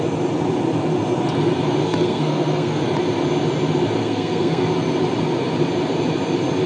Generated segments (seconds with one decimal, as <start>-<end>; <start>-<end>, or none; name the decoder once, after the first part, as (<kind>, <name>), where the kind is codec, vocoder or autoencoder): 1.8-2.8 (codec, SNAC); 4.0-4.7